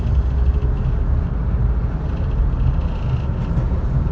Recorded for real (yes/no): yes